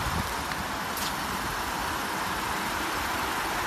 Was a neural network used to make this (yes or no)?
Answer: no